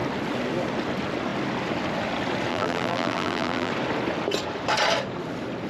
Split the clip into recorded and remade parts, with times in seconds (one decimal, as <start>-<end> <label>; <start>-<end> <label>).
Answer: 0.0-2.5 recorded; 2.5-3.7 remade; 3.7-5.7 recorded